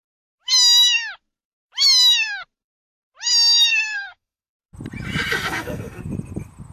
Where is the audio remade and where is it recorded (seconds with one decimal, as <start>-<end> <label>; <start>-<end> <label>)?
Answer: 0.0-3.7 recorded; 3.7-4.6 remade; 4.6-5.3 recorded; 5.3-6.0 remade; 6.0-6.7 recorded